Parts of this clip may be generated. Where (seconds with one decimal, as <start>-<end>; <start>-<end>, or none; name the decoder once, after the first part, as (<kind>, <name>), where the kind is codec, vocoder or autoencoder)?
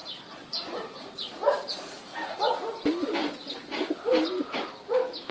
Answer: 0.0-2.1 (vocoder, Vocos)